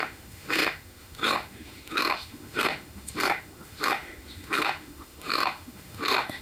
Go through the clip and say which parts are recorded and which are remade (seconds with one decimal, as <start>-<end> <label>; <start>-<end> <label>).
0.0-6.4 remade